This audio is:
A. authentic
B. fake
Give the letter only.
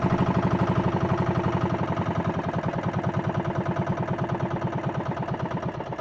A